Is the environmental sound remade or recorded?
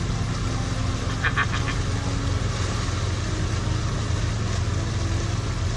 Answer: recorded